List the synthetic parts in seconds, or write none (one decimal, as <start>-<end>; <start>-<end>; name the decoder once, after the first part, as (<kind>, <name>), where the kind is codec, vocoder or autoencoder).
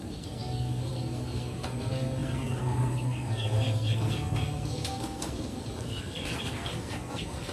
0.0-7.5 (codec, SNAC)